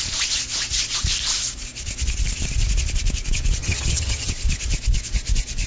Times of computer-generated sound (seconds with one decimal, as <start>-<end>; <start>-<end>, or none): 3.6-4.3